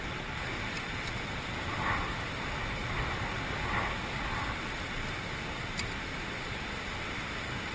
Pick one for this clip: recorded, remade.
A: recorded